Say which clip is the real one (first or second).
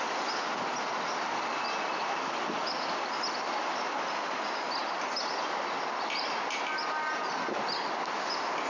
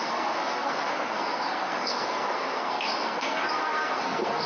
first